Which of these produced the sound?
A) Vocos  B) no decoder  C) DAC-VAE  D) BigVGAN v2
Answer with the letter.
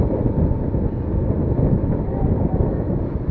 B